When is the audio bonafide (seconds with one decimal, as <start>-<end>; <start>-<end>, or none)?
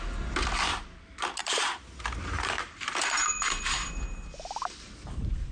0.0-1.4; 4.3-5.5